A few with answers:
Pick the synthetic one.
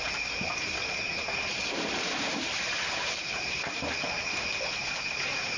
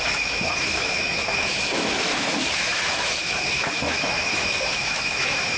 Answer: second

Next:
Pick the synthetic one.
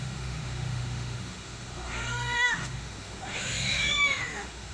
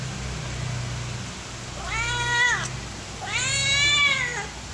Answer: first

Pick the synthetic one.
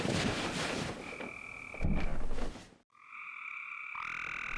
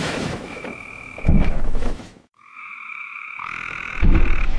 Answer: second